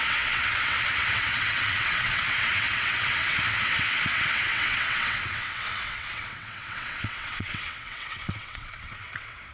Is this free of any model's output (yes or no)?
no